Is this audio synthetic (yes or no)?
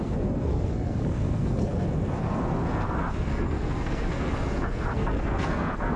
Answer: yes